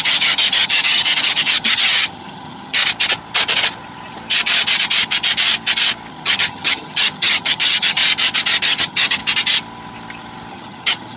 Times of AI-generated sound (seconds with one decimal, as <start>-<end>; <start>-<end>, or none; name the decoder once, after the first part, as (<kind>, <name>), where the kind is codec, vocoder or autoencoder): 0.0-2.8 (vocoder, HiFi-GAN); 6.1-8.0; 8.6-9.2; 10.5-11.2